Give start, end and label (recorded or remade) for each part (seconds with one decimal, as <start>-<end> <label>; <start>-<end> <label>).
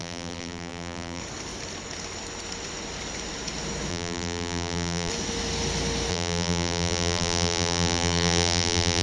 0.0-1.2 remade; 1.2-3.9 recorded; 3.9-5.1 remade; 5.1-6.1 recorded; 6.1-9.0 remade